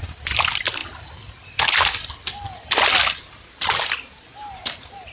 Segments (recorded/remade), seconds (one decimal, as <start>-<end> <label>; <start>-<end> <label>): 0.0-5.1 recorded